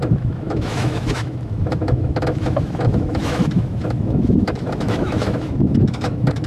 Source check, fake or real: fake